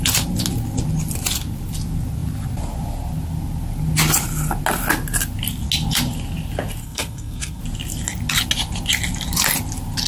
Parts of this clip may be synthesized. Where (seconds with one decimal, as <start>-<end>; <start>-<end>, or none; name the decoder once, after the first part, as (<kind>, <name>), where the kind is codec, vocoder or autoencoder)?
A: 6.8-7.6 (codec, SNAC)